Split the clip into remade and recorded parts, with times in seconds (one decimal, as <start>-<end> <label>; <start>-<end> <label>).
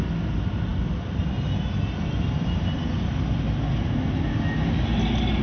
0.0-0.7 recorded; 0.7-1.2 remade; 1.2-5.4 recorded